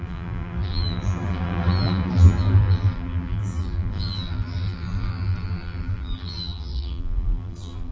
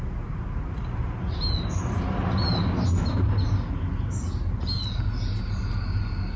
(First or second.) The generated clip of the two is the first